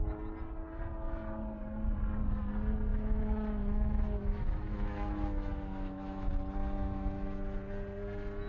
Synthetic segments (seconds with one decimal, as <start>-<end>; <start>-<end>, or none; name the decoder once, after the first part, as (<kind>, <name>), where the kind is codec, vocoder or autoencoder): 2.9-6.3 (autoencoder, DAC-VAE); 6.8-7.4